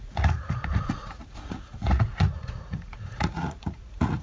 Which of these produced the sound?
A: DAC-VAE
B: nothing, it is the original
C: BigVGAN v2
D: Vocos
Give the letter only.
D